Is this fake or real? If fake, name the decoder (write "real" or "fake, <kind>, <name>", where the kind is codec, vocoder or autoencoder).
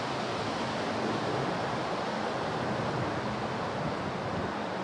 real